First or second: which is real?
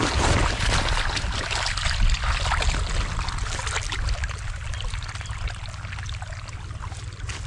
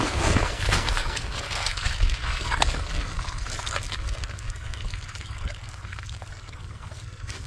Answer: first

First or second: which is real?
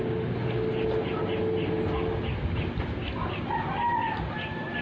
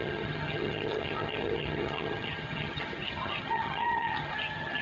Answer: first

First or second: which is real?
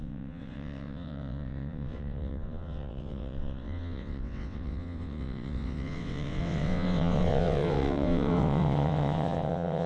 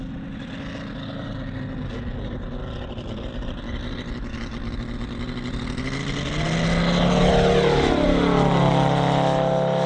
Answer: second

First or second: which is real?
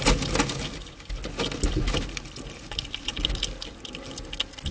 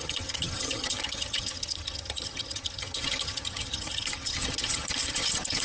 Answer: first